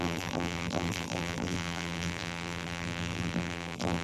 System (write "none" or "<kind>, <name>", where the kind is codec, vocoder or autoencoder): vocoder, BigVGAN v2